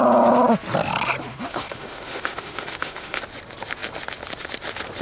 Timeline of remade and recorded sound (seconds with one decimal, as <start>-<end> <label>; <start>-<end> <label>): 0.0-1.3 recorded; 1.3-3.2 remade; 3.2-5.0 recorded